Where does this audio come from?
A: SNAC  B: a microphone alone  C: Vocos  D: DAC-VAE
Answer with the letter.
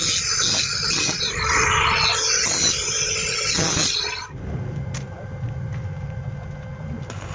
B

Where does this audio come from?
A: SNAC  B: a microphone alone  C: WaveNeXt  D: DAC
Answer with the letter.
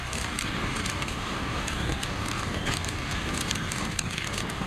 D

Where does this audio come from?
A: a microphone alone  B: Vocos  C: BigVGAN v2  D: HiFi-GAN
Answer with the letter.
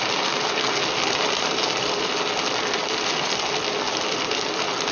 A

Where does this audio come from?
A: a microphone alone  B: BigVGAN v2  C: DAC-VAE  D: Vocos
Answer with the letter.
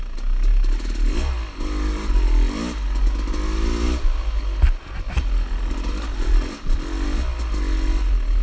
A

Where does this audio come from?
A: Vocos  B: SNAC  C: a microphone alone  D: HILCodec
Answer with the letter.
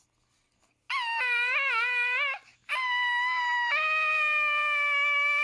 C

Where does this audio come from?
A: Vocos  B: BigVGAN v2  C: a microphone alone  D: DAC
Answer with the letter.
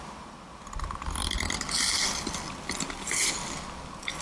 C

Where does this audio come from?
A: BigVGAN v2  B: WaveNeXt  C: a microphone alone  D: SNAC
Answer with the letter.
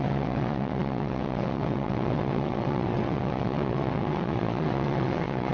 B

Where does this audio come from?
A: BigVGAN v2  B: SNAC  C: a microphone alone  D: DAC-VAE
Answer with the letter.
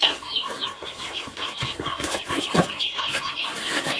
B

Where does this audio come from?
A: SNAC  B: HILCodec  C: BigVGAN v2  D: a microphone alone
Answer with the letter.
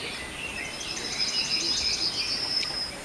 D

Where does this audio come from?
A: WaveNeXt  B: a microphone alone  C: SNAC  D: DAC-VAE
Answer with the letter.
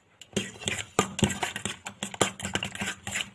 B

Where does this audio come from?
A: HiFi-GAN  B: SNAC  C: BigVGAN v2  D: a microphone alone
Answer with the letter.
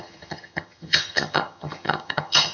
A